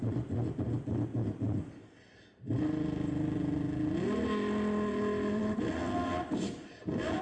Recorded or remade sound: recorded